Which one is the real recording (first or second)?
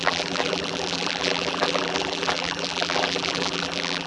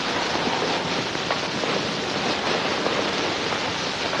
second